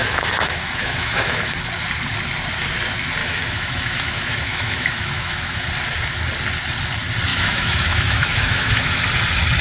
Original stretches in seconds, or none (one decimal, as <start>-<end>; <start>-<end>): 1.5-3.2; 5.7-7.3; 9.0-9.6